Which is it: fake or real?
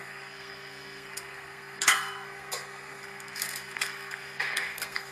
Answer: fake